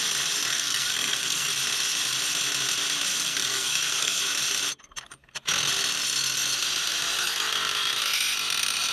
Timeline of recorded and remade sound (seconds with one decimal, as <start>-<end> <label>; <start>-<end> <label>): 0.0-0.5 recorded; 0.5-1.5 remade; 1.5-3.1 recorded; 3.1-4.2 remade; 4.2-8.9 recorded

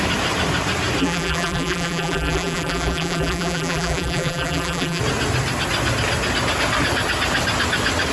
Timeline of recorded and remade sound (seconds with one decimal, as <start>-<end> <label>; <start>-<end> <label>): 0.0-1.0 recorded; 1.0-5.0 remade; 5.0-8.1 recorded

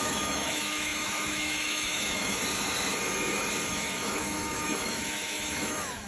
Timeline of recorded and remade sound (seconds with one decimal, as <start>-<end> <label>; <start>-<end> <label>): 0.0-2.4 remade; 2.4-3.7 recorded; 3.7-6.1 remade

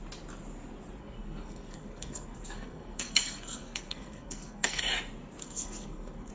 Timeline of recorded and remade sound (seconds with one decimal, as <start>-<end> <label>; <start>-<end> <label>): 0.0-1.0 recorded; 1.0-4.8 remade; 4.8-5.4 recorded; 5.4-6.3 remade

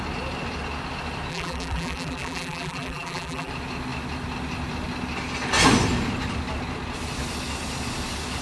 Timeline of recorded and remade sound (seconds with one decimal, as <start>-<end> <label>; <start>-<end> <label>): 0.0-1.3 recorded; 1.3-3.5 remade; 3.5-8.4 recorded

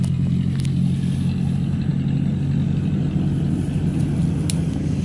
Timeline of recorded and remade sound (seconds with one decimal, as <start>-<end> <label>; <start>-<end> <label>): 0.0-5.0 recorded

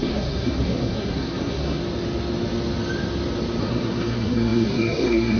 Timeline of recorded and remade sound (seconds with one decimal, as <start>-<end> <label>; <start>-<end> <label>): 0.0-1.8 remade; 1.8-3.6 recorded; 3.6-5.4 remade